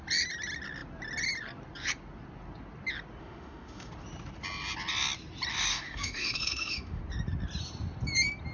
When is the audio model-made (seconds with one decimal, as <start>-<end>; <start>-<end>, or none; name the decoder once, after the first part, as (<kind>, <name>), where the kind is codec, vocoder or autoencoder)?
3.2-3.9 (autoencoder, DAC-VAE); 5.7-7.0